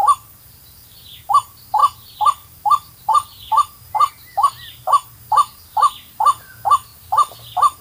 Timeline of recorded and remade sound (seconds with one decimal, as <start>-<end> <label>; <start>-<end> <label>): 0.0-1.3 remade; 1.3-1.8 recorded; 1.8-4.1 remade; 4.1-7.8 recorded